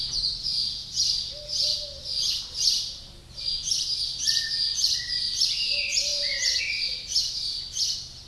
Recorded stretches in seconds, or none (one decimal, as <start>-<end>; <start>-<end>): 0.0-6.1; 6.6-8.3

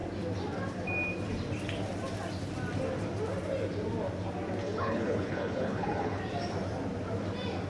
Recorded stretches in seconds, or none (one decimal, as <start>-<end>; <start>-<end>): 0.0-4.6; 6.2-7.7

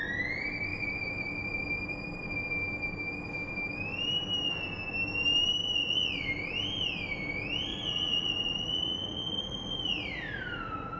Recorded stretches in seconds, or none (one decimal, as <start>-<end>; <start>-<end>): 0.0-5.8; 6.3-7.7

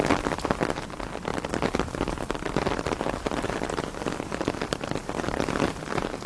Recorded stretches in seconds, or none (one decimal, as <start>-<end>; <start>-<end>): 0.0-1.3; 2.5-6.3

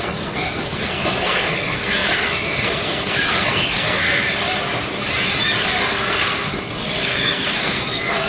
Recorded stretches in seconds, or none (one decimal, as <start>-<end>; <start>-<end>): 4.4-5.8

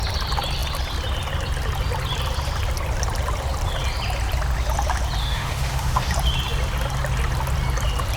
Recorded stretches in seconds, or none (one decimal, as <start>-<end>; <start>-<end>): 0.0-5.2; 6.1-8.2